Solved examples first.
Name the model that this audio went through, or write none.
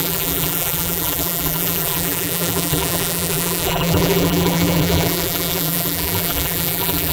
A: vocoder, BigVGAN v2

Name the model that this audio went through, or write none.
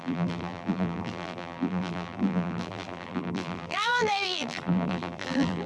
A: vocoder, BigVGAN v2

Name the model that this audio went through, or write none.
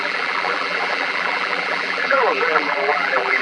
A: vocoder, BigVGAN v2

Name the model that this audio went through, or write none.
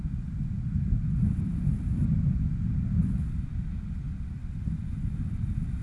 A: none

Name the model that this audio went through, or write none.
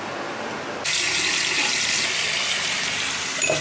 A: none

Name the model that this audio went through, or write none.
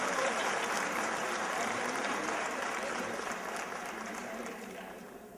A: vocoder, BigVGAN v2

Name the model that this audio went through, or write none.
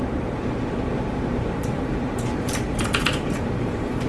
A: vocoder, BigVGAN v2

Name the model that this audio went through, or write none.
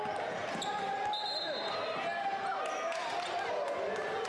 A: none